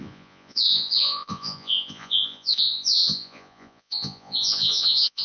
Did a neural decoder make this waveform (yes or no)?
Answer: yes